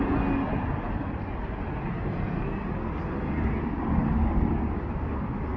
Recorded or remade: recorded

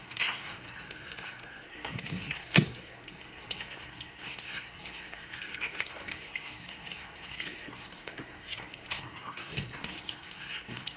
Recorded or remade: remade